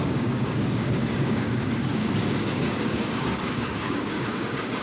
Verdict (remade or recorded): remade